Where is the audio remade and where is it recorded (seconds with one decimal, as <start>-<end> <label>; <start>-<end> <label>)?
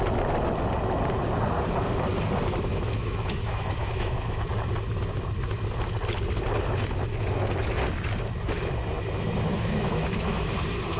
0.0-2.7 recorded; 2.7-4.5 remade; 4.5-9.5 recorded; 9.5-10.5 remade; 10.5-11.0 recorded